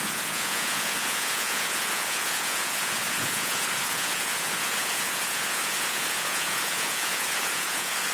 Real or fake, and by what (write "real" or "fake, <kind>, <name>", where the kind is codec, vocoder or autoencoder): fake, vocoder, Vocos